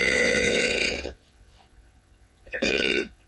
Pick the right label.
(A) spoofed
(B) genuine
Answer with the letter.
A